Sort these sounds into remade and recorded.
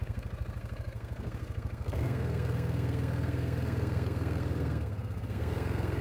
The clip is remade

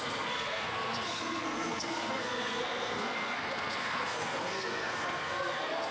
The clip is remade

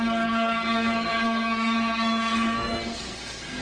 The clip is remade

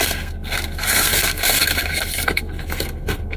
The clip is remade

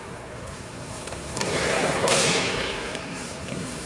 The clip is remade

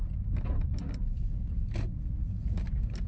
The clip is recorded